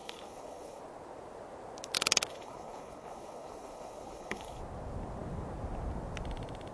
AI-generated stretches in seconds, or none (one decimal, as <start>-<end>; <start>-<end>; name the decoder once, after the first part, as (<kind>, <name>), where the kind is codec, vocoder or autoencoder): 0.0-0.8 (codec, HILCodec); 2.3-4.6